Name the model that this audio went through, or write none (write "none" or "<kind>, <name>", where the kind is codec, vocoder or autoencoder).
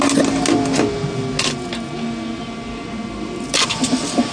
none